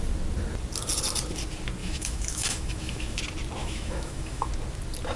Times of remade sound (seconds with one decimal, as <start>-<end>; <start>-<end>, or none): 1.8-3.2; 3.6-4.5